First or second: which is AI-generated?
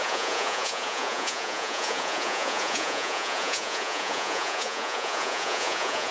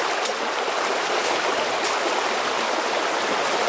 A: first